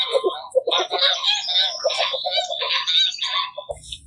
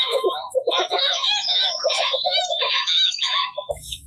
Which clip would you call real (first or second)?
first